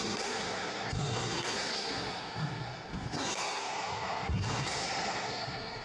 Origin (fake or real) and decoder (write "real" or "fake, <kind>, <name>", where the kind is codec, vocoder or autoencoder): fake, codec, SNAC